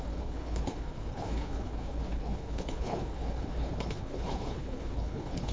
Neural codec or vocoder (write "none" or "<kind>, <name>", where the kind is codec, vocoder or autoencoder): codec, HILCodec